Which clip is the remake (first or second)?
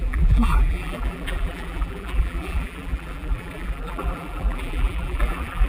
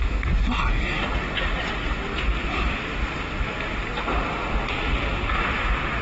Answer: first